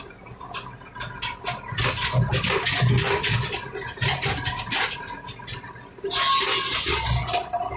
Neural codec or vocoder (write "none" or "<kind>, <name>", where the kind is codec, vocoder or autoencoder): none